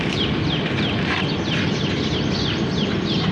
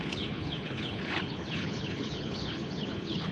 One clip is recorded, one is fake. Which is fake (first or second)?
second